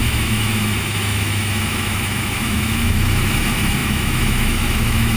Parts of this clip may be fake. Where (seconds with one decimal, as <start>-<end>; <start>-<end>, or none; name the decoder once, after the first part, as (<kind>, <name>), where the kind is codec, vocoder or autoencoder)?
0.0-5.2 (autoencoder, DAC-VAE)